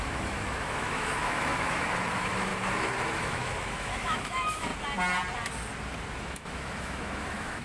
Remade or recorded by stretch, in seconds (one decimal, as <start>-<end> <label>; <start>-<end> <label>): 0.0-2.5 remade; 2.5-3.1 recorded; 3.1-4.7 remade; 4.7-6.2 recorded; 6.2-7.6 remade